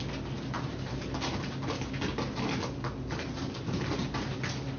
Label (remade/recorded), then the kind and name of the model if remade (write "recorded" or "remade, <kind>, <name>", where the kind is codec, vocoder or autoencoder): recorded